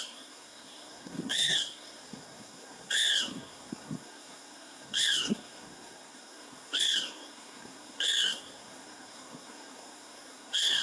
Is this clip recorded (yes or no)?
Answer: no